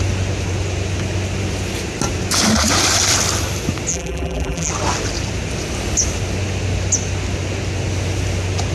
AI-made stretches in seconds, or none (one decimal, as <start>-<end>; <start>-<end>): 3.9-4.7